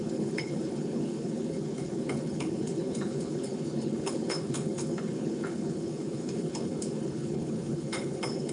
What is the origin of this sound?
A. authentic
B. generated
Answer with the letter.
B